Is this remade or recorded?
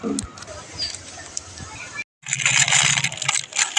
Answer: recorded